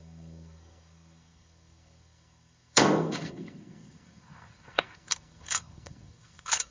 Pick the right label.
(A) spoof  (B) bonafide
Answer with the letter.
A